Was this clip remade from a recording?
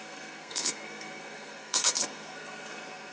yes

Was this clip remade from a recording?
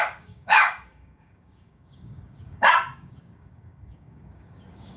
yes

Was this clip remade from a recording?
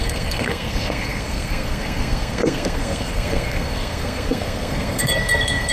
yes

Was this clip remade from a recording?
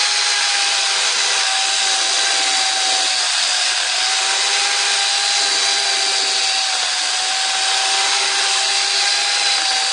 no